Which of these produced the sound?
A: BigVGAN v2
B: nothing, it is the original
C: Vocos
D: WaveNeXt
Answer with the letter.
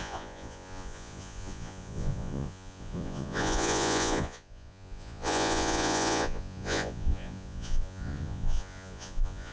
C